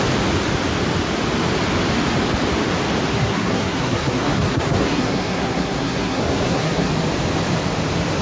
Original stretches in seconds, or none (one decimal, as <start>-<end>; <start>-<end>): 0.0-3.1; 6.9-8.2

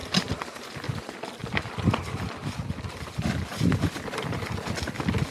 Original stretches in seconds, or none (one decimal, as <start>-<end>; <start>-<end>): 0.0-5.3

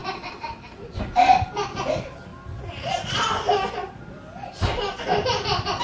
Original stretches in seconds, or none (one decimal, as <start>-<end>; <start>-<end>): 0.9-5.8

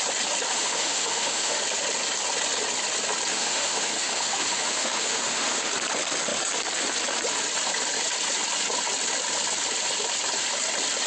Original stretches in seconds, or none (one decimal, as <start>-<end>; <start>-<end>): 0.0-0.5; 1.6-3.3; 5.7-11.1